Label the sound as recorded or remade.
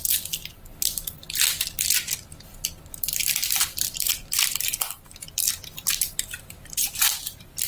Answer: remade